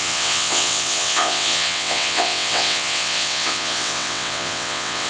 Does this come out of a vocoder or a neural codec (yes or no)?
yes